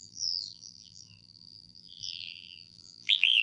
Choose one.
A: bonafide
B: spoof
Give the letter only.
B